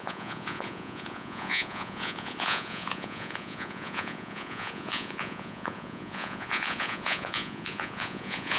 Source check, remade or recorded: remade